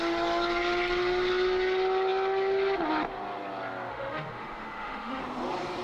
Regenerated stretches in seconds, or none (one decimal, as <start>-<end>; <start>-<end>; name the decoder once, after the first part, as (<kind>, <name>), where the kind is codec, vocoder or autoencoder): 3.9-5.2 (autoencoder, DAC-VAE)